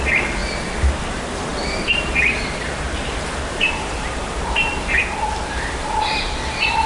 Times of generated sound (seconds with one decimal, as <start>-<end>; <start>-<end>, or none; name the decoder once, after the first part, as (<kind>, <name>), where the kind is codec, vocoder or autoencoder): 0.0-0.4 (vocoder, BigVGAN v2); 1.0-5.0; 5.5-6.9